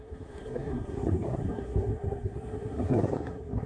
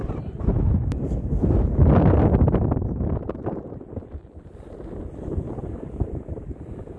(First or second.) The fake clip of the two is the first